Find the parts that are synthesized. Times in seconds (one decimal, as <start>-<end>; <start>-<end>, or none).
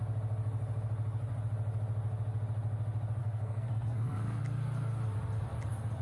3.2-4.4